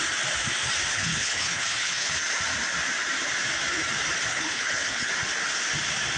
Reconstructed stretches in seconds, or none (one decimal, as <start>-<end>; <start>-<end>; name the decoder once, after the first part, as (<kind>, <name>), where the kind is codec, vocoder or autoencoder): 0.9-2.1 (codec, HILCodec); 4.3-5.1

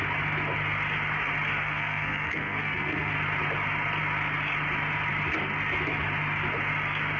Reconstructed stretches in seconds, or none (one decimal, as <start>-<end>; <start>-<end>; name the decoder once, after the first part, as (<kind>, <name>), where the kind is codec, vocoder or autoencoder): 1.6-3.1 (codec, SNAC)

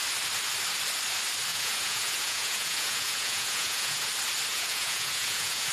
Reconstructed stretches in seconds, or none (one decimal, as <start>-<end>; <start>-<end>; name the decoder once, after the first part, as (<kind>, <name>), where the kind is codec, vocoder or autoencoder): 1.5-4.0 (vocoder, Vocos); 4.5-5.7